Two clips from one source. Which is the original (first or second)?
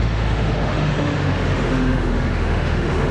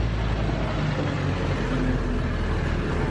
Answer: second